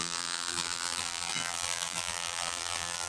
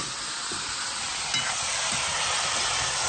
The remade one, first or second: first